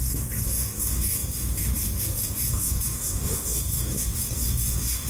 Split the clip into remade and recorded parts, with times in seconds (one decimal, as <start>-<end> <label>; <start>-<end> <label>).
0.0-5.1 remade

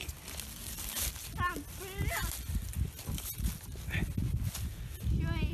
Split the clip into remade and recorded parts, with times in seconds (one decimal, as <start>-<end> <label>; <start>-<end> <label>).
0.0-5.5 recorded

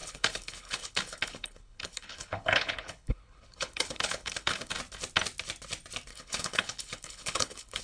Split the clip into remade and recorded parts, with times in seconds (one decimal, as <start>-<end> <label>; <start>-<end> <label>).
0.0-4.7 remade; 4.7-6.1 recorded; 6.1-7.8 remade

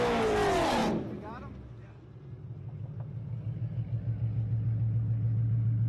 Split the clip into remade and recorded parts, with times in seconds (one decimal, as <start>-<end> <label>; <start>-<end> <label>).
0.0-5.9 recorded